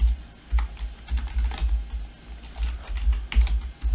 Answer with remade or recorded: recorded